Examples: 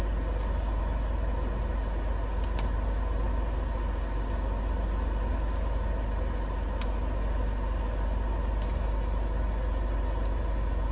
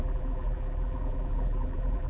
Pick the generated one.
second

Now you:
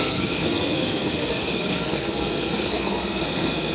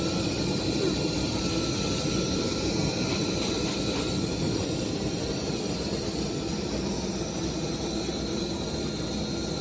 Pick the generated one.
first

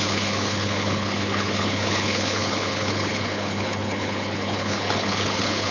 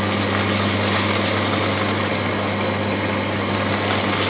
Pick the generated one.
first